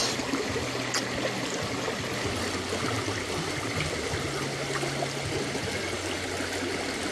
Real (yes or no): yes